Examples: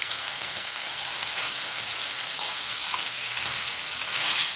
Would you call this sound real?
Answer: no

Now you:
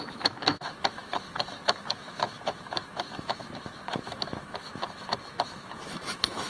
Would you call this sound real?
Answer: no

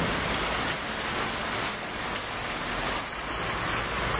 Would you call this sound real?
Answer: yes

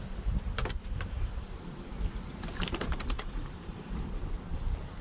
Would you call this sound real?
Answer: no